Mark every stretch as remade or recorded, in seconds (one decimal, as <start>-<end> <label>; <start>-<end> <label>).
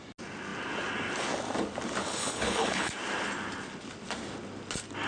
0.0-2.0 recorded; 2.0-2.9 remade; 2.9-5.1 recorded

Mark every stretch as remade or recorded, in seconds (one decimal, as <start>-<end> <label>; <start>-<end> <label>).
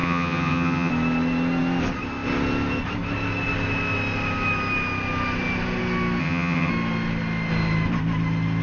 0.0-0.9 remade; 0.9-6.2 recorded; 6.2-6.7 remade; 6.7-8.6 recorded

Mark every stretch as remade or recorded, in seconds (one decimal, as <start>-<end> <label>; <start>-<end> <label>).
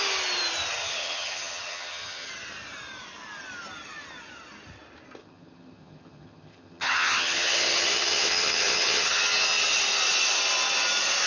0.0-0.8 recorded; 0.8-2.3 remade; 2.3-5.2 recorded; 5.2-9.2 remade; 9.2-11.3 recorded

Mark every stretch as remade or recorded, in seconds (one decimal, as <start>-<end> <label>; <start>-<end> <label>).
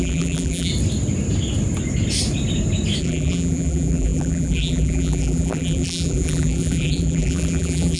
0.0-0.7 remade; 0.7-3.0 recorded; 3.0-8.0 remade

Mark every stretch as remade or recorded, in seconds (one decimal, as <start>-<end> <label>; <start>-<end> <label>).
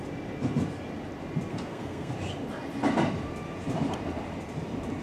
0.0-1.5 recorded; 1.5-2.1 remade; 2.1-5.0 recorded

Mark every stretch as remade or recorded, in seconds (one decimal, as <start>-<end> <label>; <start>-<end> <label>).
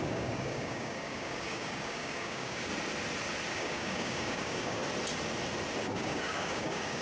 0.0-2.7 remade; 2.7-3.5 recorded; 3.5-4.8 remade; 4.8-5.8 recorded; 5.8-7.0 remade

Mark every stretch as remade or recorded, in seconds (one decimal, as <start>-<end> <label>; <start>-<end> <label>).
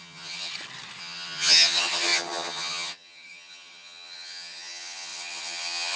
0.0-0.5 remade; 0.5-1.0 recorded; 1.0-6.0 remade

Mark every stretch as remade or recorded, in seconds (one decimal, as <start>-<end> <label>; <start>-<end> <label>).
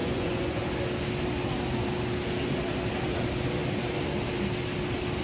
0.0-0.6 remade; 0.6-5.2 recorded